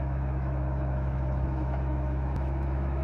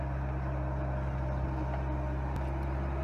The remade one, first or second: first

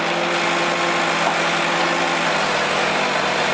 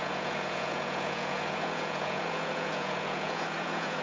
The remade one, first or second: second